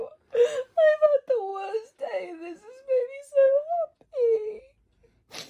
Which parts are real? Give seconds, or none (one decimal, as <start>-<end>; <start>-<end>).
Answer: 0.0-5.5